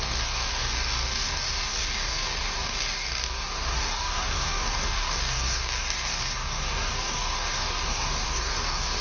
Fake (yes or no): yes